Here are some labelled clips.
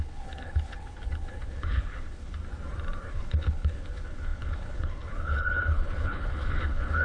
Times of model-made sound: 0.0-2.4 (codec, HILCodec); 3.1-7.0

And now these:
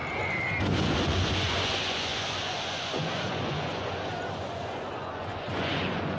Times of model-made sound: 0.6-6.2 (vocoder, Vocos)